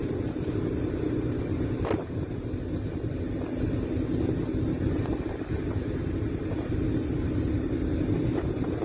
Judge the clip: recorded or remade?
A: recorded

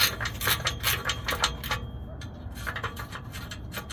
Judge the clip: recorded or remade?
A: recorded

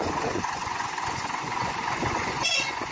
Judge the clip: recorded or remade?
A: remade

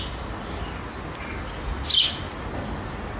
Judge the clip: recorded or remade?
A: recorded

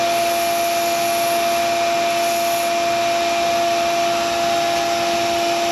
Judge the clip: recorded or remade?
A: recorded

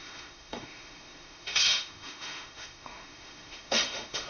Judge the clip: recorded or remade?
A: remade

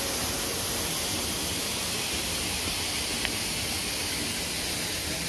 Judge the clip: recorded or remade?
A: recorded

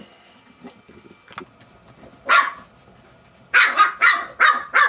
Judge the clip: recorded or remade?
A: recorded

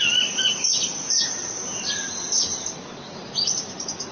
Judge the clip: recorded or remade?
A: recorded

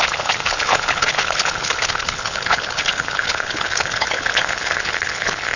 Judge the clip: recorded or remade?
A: remade